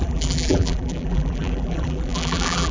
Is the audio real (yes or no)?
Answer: no